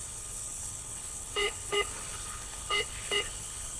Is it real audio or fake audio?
fake